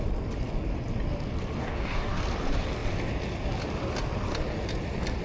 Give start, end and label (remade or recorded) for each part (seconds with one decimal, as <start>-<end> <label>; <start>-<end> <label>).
0.0-1.6 recorded; 1.6-2.2 remade; 2.2-5.2 recorded